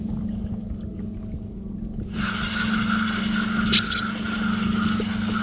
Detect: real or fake real